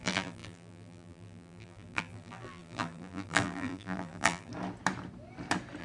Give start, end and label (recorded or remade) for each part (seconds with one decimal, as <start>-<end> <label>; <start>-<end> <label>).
0.0-4.5 remade; 4.5-5.8 recorded